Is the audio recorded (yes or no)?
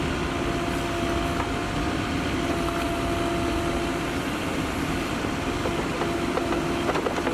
yes